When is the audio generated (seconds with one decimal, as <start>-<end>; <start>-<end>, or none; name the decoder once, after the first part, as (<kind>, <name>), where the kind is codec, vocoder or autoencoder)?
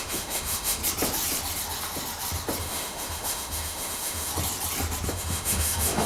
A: 0.0-0.8 (autoencoder, DAC-VAE); 2.6-4.3; 5.1-6.1